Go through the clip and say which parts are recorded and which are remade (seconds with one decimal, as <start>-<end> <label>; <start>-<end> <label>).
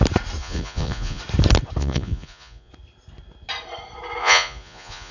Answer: 0.0-0.4 recorded; 0.4-1.2 remade; 1.2-1.8 recorded; 1.8-2.7 remade; 2.7-4.2 recorded; 4.2-5.1 remade